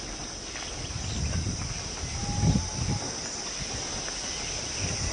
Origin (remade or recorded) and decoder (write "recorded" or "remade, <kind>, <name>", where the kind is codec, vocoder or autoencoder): recorded